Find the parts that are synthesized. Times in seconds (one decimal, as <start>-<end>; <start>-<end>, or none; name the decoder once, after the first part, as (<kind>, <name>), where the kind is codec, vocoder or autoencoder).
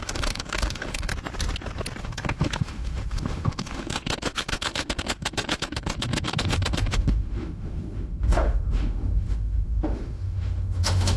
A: 0.0-1.1 (autoencoder, DAC-VAE); 2.0-11.2